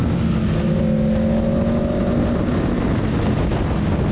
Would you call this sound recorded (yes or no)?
yes